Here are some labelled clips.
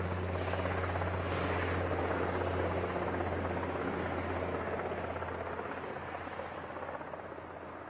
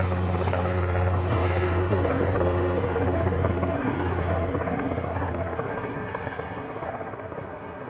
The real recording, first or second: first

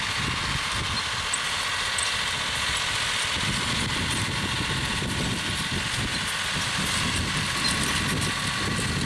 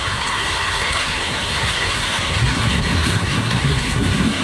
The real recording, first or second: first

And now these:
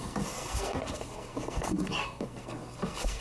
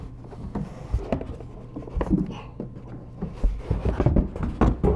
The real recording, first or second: second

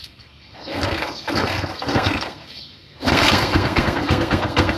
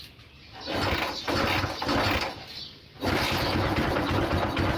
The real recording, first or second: second